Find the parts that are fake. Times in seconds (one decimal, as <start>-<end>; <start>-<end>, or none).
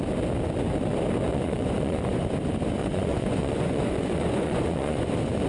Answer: 1.3-2.2; 2.8-5.1